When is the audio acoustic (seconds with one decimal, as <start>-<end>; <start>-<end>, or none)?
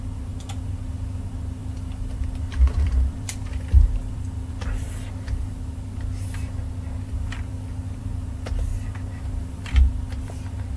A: 0.0-1.6; 6.6-7.5; 8.0-10.8